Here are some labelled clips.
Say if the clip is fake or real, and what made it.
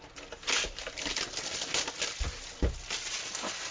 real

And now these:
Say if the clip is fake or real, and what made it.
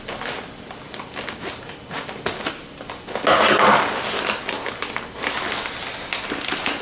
real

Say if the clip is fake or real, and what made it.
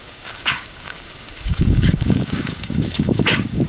fake, codec, DAC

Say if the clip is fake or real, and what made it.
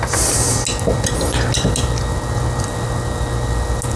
real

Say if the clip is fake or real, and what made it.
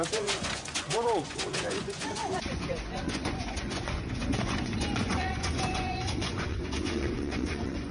fake, vocoder, Vocos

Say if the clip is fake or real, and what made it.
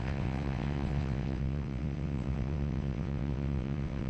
fake, vocoder, WaveNeXt